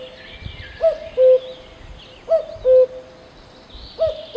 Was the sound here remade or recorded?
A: recorded